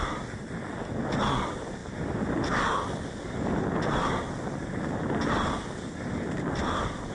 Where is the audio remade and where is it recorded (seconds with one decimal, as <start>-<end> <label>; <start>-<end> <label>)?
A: 0.0-7.1 recorded